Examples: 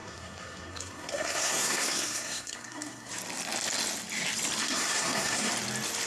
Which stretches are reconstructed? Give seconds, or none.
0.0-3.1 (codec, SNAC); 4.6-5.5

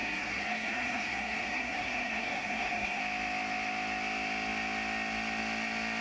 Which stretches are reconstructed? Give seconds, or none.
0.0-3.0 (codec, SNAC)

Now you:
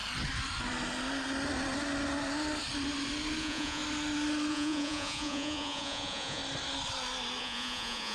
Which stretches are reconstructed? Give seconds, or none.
3.4-3.8 (vocoder, Vocos); 4.5-6.4; 7.4-8.1